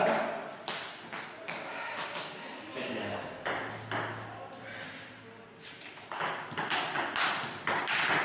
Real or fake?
real